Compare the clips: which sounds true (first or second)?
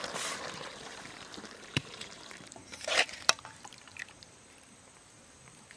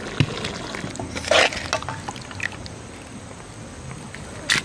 second